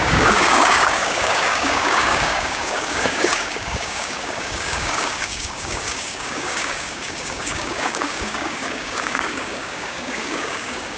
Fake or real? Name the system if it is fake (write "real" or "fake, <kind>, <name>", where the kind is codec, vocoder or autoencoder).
fake, codec, DAC